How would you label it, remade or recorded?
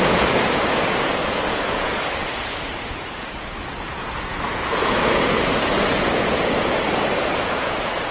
remade